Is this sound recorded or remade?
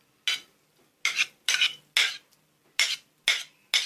recorded